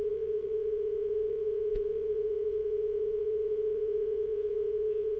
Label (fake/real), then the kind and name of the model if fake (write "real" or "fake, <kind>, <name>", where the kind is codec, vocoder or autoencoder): fake, vocoder, WaveNeXt